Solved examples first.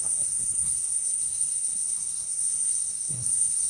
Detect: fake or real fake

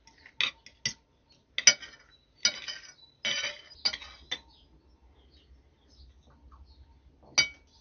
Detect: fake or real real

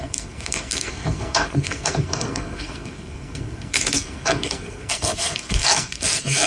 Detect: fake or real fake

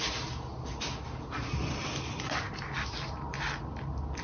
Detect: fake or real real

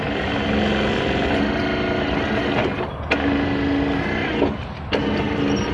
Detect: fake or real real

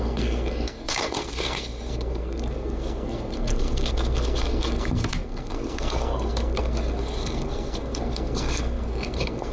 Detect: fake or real fake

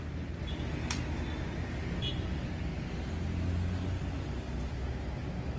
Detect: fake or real real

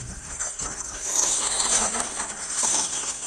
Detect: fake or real fake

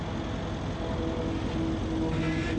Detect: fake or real real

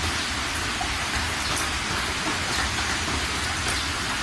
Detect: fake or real real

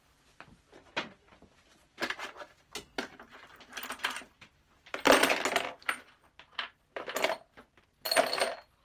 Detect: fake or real real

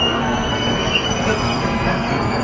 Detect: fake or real fake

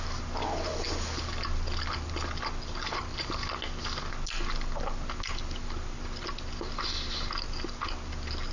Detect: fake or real real